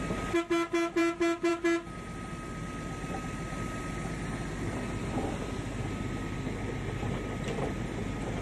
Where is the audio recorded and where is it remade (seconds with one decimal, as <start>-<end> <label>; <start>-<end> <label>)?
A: 0.0-8.4 recorded